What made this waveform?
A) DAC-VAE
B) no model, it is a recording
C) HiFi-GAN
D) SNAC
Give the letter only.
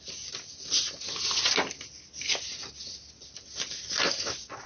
B